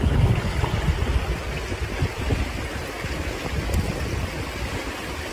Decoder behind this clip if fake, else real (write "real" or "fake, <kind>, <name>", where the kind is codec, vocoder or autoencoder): real